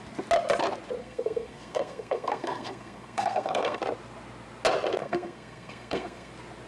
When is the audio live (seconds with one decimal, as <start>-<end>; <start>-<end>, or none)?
0.0-1.0; 3.8-5.0; 6.3-6.7